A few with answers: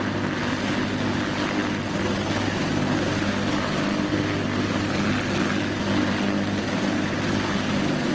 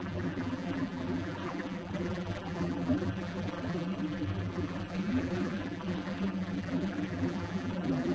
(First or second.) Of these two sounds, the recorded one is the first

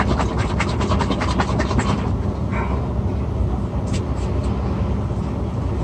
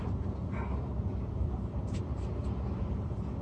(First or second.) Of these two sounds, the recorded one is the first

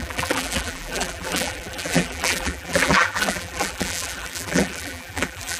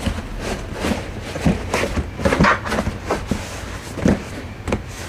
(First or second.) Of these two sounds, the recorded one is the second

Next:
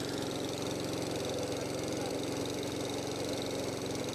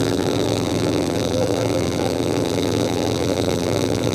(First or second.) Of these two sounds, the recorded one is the first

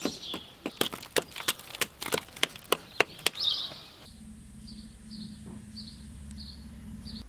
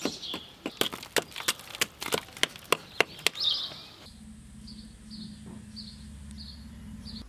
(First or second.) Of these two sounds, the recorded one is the second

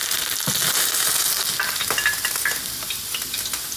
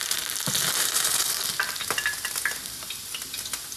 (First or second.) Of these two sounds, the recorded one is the first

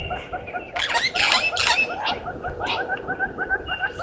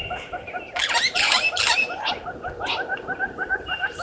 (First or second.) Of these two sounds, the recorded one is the first